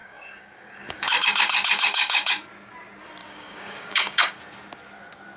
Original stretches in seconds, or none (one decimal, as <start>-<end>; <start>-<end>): 2.3-3.2; 4.4-5.4

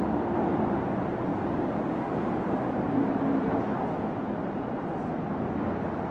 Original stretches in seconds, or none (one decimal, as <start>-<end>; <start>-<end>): 0.0-1.3; 2.2-6.1

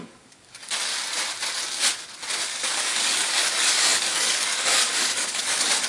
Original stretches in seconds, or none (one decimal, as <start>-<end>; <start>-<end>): 0.9-2.4

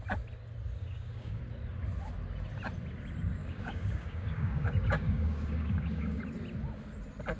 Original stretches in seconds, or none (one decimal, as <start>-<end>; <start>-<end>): 0.0-0.8; 1.4-3.4; 6.2-7.4

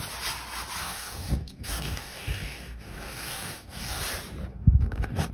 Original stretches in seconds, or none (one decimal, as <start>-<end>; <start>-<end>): 0.0-0.8; 4.0-4.5

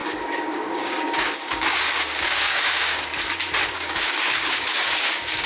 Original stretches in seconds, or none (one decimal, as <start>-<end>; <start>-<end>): 3.1-3.7